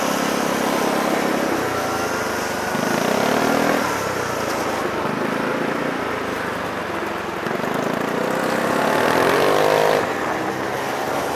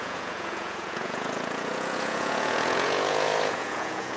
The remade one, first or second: second